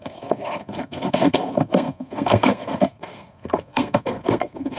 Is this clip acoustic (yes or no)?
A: no